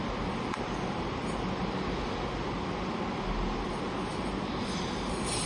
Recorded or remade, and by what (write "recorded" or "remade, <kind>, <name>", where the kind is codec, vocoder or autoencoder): recorded